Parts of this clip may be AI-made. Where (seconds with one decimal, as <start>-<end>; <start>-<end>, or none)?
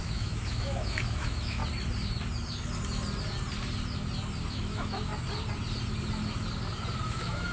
0.0-1.6; 4.5-5.1; 7.1-7.5